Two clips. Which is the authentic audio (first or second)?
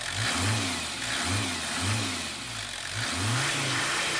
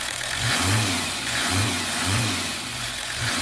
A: first